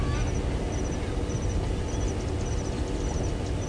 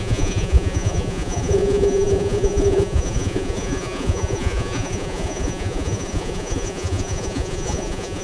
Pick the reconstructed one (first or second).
second